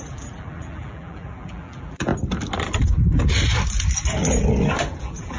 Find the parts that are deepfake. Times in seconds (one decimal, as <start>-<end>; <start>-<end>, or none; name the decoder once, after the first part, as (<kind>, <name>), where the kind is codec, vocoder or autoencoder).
0.0-2.1 (vocoder, BigVGAN v2); 5.0-5.4